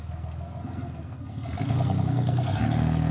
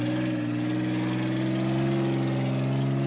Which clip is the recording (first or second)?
second